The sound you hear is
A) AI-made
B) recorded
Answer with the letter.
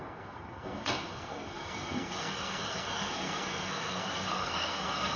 A